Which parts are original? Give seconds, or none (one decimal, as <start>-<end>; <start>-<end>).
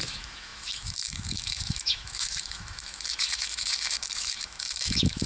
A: none